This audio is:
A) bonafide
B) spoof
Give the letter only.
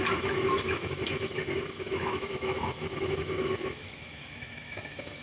B